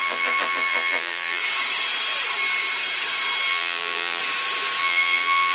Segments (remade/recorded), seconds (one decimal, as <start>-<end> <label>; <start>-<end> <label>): 0.0-1.4 remade; 1.4-3.5 recorded; 3.5-4.2 remade; 4.2-4.8 recorded; 4.8-5.5 remade